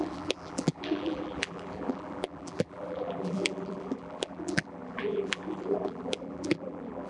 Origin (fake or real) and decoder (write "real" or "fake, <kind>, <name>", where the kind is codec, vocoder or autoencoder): fake, vocoder, BigVGAN v2